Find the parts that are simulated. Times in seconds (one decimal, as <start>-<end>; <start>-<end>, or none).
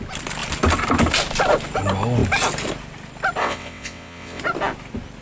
3.4-4.4